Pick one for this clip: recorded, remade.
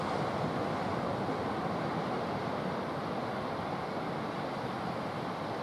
recorded